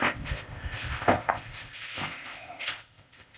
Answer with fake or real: fake